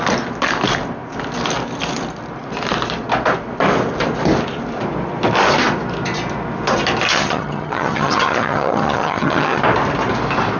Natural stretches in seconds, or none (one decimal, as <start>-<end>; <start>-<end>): 0.0-7.1; 9.6-10.6